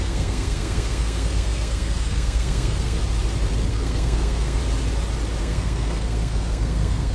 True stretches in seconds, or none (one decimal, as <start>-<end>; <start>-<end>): 3.0-3.7; 4.6-5.4